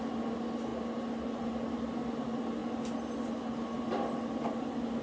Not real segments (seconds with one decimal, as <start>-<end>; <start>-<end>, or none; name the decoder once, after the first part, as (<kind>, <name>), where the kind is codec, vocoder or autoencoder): none